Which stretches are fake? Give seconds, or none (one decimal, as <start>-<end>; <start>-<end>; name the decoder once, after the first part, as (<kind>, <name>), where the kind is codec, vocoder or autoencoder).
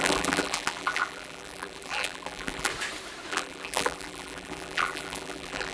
0.0-2.7 (vocoder, BigVGAN v2); 3.3-5.7